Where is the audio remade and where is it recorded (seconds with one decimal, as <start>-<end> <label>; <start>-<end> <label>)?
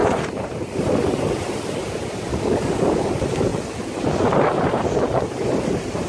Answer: 0.0-2.3 recorded; 2.3-3.1 remade; 3.1-6.1 recorded